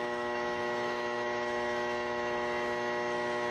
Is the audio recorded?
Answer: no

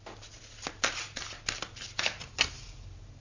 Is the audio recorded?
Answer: yes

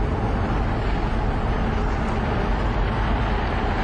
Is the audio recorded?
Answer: yes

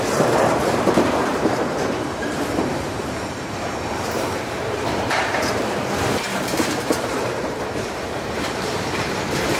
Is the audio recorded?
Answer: no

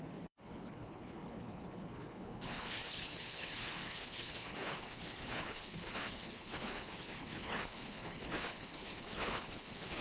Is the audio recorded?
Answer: no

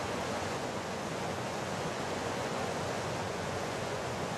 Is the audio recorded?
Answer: no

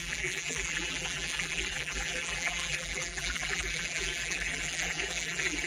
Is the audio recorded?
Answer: no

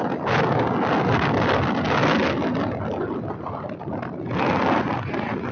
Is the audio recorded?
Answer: yes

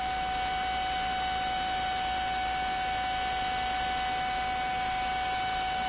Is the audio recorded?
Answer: yes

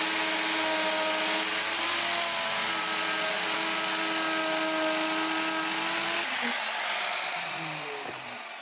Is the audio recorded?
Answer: yes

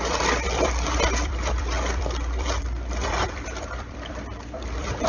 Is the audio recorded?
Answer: no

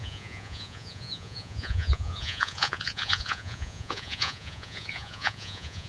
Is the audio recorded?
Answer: no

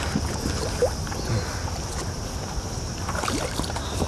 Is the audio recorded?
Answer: yes